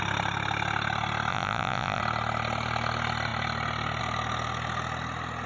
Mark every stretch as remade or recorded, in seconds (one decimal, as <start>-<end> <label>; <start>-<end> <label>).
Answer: 0.0-1.3 recorded; 1.3-2.0 remade; 2.0-5.5 recorded